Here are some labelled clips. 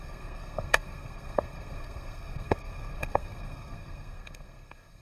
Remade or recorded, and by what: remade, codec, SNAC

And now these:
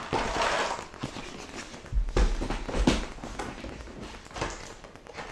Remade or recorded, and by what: recorded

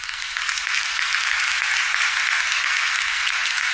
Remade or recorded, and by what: remade, codec, SNAC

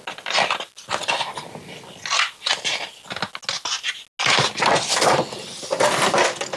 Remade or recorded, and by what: recorded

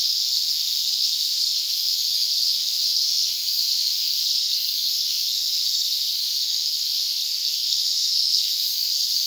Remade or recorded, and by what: remade, codec, SNAC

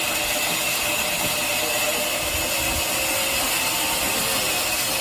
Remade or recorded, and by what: recorded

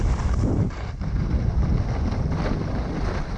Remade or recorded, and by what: recorded